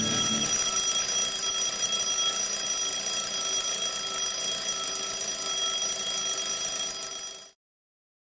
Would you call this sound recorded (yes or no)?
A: yes